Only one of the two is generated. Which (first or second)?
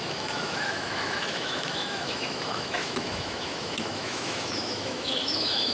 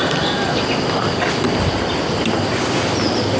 first